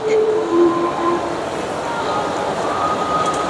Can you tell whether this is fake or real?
fake